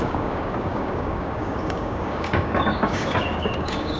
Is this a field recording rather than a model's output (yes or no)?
no